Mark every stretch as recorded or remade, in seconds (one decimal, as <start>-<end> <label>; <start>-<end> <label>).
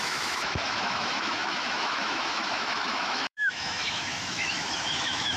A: 0.0-5.4 remade